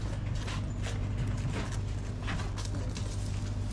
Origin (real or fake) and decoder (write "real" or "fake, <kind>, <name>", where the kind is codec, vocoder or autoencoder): real